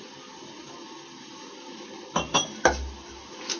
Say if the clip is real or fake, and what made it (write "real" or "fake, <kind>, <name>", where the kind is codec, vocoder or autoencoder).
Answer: real